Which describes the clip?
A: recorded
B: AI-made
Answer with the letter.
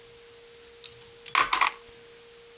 A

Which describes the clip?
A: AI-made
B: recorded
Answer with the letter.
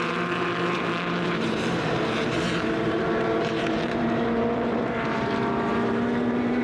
A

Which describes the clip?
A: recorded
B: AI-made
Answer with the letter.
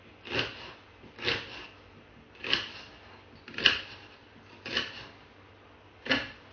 B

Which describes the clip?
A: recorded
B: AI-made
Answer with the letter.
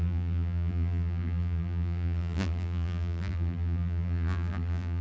B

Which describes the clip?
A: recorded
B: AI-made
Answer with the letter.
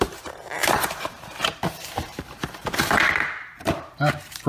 B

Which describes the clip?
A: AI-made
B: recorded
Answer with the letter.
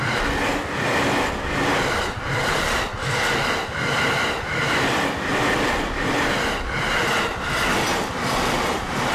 B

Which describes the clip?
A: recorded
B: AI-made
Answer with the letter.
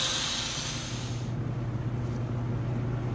A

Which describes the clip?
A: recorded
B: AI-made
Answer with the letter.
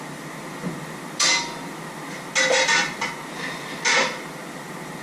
A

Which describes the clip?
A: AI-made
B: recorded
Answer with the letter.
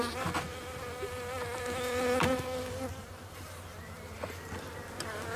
A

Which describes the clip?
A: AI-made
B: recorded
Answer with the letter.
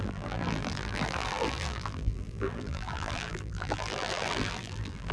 A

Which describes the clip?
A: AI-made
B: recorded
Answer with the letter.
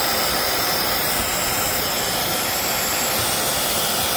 B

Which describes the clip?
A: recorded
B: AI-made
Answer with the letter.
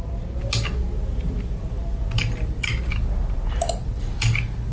A